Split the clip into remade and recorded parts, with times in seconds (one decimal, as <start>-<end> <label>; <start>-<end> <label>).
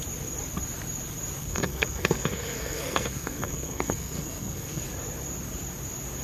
0.0-1.4 recorded; 1.4-4.8 remade; 4.8-6.2 recorded